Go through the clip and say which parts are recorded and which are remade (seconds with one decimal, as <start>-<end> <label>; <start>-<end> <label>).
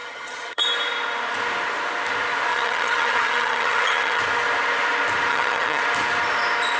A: 0.0-0.6 remade; 0.6-2.5 recorded; 2.5-4.2 remade; 4.2-5.3 recorded; 5.3-5.8 remade; 5.8-6.8 recorded